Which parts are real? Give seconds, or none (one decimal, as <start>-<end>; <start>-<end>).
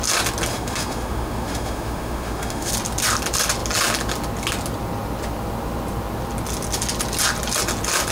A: 0.0-0.5; 2.7-8.1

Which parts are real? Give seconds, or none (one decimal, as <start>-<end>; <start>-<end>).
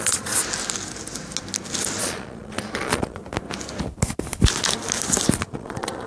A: 0.4-2.0; 3.2-5.4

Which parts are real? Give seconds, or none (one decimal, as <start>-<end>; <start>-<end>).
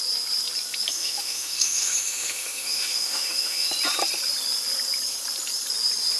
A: 0.0-0.9; 3.7-6.2